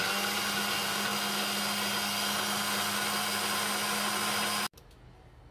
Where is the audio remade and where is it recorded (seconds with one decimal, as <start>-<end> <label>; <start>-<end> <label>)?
0.0-5.5 recorded